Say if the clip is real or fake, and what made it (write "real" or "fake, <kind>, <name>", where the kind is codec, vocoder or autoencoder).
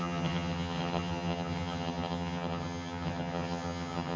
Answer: fake, vocoder, HiFi-GAN